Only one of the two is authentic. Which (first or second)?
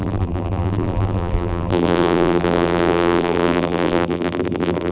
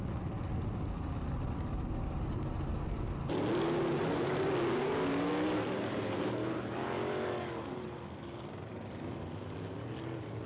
second